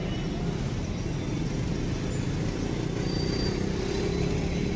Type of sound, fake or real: real